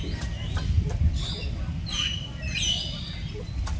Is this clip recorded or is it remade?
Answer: recorded